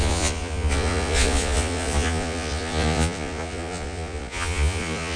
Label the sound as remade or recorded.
remade